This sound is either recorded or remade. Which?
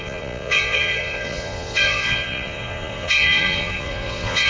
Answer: remade